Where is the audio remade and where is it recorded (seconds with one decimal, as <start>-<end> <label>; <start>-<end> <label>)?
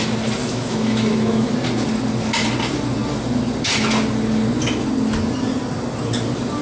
0.0-0.4 recorded; 0.4-1.5 remade; 1.5-6.6 recorded